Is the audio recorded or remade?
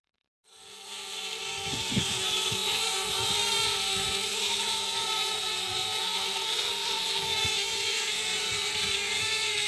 remade